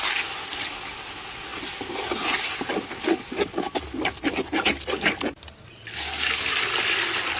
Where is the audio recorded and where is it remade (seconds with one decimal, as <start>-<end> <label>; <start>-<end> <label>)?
0.0-7.4 recorded